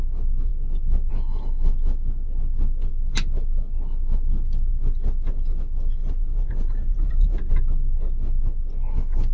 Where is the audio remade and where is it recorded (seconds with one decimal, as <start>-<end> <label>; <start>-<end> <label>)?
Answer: 0.0-6.0 recorded; 6.0-7.5 remade; 7.5-9.3 recorded